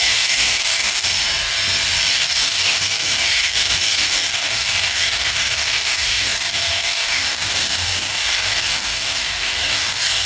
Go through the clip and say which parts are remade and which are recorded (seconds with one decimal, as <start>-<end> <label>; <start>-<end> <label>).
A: 0.0-1.2 remade; 1.2-2.1 recorded; 2.1-10.3 remade